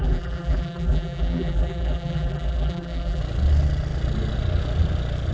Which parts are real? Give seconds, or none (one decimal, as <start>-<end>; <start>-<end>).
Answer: 3.2-5.3